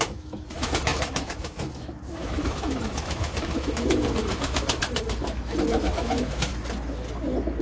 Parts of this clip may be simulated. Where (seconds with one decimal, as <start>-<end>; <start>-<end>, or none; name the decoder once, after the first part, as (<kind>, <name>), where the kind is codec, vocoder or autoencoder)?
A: 0.0-6.5 (autoencoder, DAC-VAE)